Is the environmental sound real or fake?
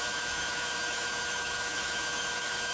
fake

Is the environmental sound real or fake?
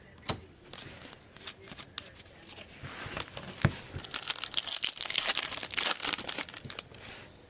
real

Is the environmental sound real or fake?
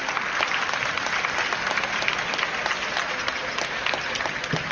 real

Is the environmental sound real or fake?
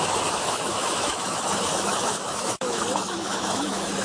fake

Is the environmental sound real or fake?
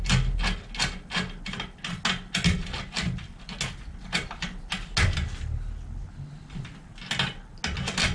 real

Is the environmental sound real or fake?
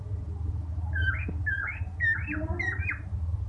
real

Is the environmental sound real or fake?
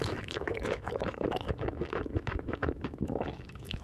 fake